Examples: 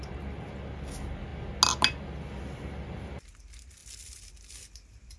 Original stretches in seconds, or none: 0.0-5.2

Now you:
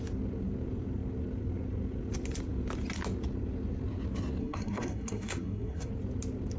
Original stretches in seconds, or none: 0.0-4.4; 5.9-6.6

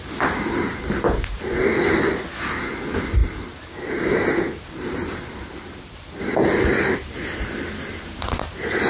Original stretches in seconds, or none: 0.0-8.9